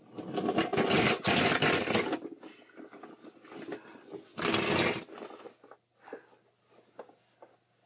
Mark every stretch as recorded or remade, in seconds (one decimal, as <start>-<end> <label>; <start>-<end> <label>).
0.0-7.9 recorded